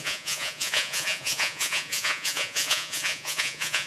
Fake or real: fake